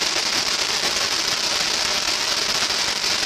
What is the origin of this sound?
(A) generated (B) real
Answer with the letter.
B